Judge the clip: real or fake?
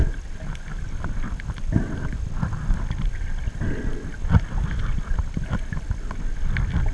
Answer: real